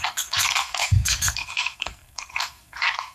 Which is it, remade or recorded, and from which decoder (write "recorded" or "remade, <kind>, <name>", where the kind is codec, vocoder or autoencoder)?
remade, codec, SNAC